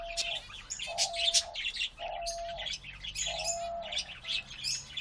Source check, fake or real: real